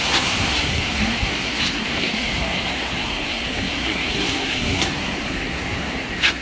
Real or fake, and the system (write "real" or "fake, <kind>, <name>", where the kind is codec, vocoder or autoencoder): fake, codec, SNAC